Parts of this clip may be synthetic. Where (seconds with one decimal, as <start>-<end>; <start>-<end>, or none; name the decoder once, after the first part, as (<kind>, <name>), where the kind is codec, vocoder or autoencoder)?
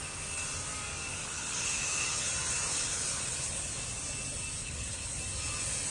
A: 1.1-2.3 (codec, HILCodec); 2.7-3.7; 4.6-5.2